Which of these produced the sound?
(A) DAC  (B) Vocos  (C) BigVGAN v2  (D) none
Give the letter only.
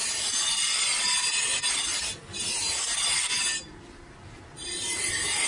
D